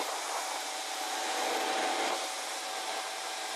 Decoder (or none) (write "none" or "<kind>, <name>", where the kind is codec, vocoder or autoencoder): vocoder, BigVGAN v2